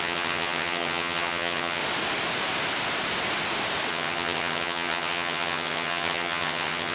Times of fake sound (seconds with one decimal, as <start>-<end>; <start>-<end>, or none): 0.0-1.8; 3.9-6.9